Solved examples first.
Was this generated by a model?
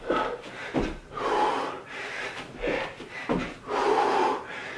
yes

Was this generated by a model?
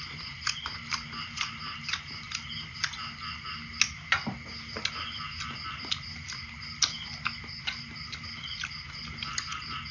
no